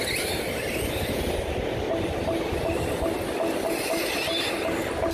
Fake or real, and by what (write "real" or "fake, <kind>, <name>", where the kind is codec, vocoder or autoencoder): real